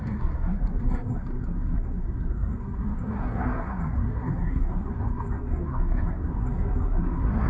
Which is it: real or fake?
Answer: fake